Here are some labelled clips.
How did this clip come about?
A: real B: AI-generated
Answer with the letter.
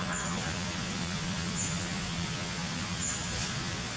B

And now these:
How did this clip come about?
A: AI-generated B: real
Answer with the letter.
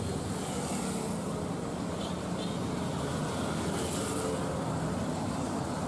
B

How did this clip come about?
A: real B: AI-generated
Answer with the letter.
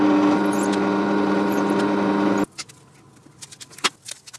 A